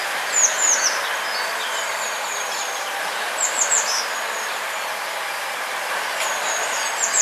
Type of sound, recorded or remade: recorded